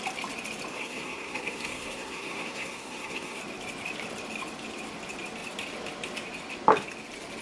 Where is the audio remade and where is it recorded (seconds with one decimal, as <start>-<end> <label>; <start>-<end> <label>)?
0.0-0.7 recorded; 0.7-3.4 remade; 3.4-7.4 recorded